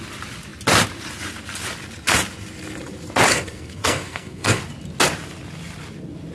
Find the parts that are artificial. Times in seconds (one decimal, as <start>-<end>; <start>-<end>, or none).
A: 3.3-4.6